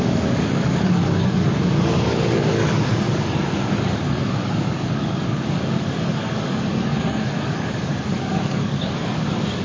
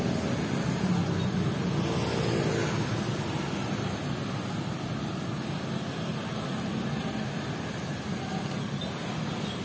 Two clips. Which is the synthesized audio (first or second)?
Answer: first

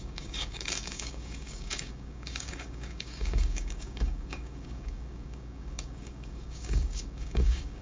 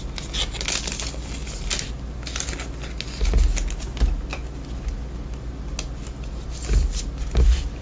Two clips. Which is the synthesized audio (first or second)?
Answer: first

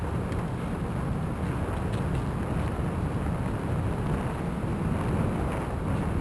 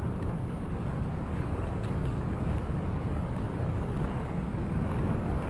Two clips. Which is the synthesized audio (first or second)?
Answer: second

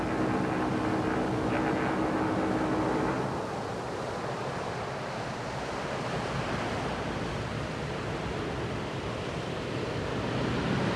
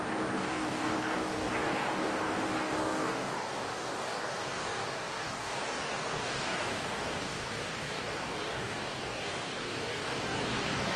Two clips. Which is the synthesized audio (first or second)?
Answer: second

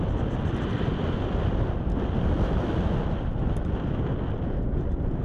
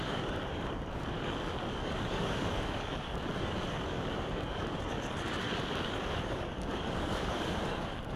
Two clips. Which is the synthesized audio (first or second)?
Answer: second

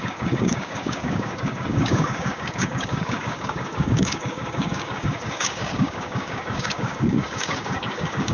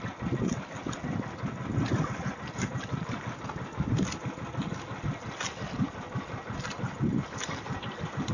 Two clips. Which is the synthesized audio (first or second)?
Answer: first